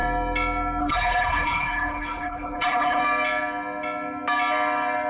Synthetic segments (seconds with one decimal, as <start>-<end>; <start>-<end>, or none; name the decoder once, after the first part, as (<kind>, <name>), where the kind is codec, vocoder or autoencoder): 0.8-3.0 (codec, HILCodec)